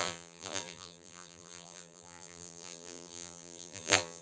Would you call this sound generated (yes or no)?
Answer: yes